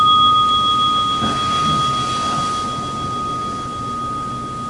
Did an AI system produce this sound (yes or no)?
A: no